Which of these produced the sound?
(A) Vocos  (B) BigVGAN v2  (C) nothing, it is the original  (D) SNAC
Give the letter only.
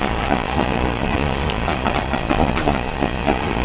A